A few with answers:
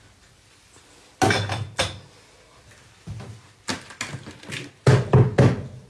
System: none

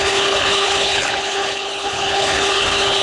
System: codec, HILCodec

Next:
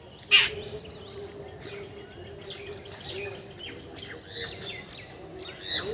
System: none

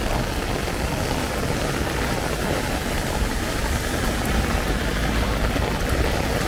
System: none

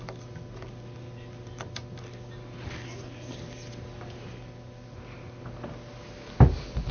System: none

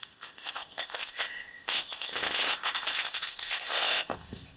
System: codec, ZipCodec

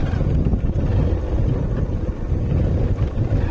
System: none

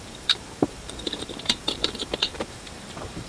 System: vocoder, BigVGAN v2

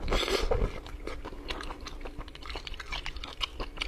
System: none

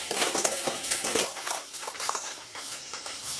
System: codec, SNAC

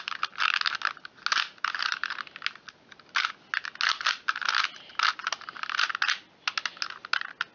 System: none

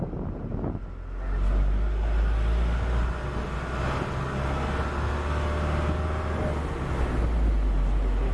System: none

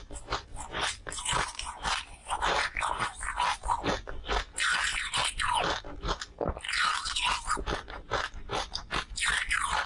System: none